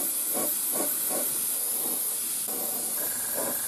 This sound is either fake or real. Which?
real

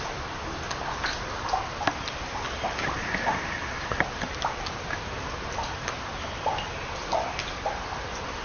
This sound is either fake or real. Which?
real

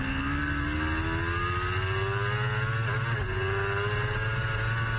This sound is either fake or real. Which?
real